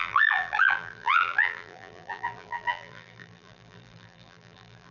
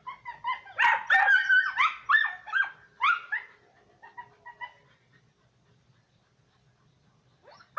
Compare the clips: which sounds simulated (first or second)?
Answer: first